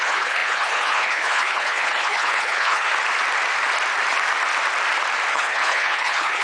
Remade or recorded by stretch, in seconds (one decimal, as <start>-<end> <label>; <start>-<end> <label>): 0.0-2.9 remade; 2.9-5.3 recorded; 5.3-6.4 remade